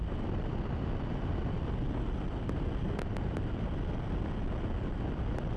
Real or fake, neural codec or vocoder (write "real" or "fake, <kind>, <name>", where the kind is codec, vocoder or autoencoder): real